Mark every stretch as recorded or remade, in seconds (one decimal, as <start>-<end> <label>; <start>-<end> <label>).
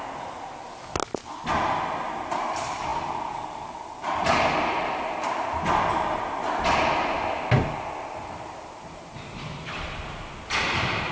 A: 0.0-11.1 recorded